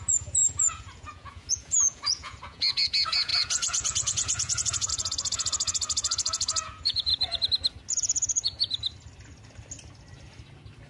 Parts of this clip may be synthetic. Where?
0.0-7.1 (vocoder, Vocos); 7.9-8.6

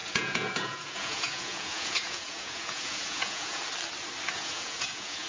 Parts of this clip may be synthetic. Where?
0.0-3.6 (vocoder, Vocos); 4.3-5.3

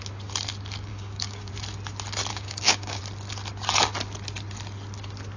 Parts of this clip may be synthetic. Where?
0.9-1.5 (codec, DAC); 2.3-3.0

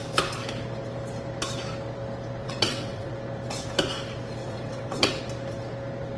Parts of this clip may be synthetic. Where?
2.4-3.1 (vocoder, WaveNeXt); 4.4-5.2

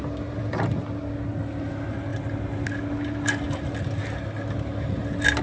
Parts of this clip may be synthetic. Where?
none

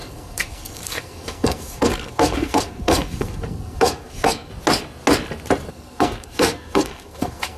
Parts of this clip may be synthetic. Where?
0.0-4.5 (codec, SNAC); 5.7-7.6

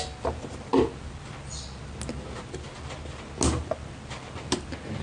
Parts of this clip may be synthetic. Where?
none